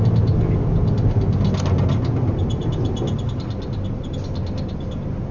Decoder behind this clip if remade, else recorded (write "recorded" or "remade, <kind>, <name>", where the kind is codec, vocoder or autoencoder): recorded